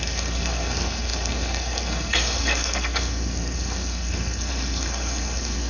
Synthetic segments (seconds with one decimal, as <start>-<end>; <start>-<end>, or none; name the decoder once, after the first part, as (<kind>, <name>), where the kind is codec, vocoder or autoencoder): 0.0-5.7 (codec, SNAC)